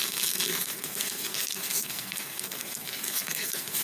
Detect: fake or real fake